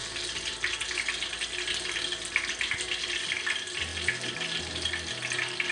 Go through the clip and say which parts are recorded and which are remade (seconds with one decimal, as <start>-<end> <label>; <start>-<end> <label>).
0.0-5.7 recorded